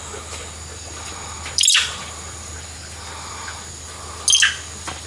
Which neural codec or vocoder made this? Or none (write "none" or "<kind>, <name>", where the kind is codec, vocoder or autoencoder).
none